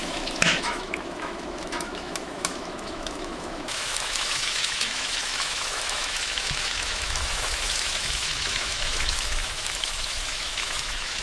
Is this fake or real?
fake